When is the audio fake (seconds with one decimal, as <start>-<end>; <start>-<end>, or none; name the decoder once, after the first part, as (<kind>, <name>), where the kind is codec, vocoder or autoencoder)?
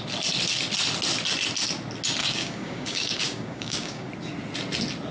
2.2-4.1 (codec, DAC)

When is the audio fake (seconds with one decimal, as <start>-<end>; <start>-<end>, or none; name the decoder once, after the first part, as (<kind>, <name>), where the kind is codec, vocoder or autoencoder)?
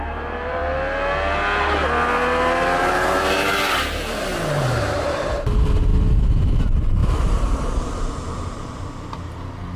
0.0-0.6 (vocoder, BigVGAN v2); 2.9-5.9; 6.4-7.0; 7.6-9.8